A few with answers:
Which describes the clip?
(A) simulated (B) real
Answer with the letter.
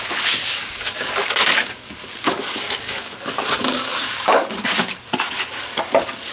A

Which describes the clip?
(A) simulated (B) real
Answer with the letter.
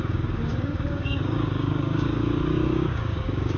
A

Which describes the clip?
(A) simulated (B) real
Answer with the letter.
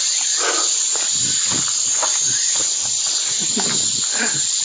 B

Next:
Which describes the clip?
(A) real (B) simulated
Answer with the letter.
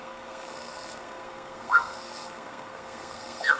B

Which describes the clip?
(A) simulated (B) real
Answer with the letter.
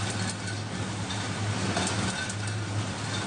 B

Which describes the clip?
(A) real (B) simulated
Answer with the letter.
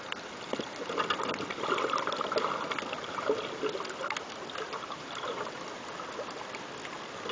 A